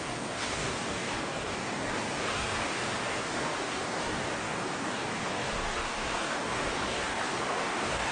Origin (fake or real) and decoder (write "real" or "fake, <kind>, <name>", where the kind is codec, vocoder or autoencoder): fake, codec, DAC